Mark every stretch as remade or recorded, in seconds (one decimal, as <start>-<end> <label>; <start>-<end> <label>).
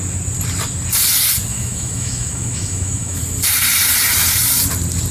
0.0-1.5 recorded; 1.5-3.2 remade; 3.2-5.1 recorded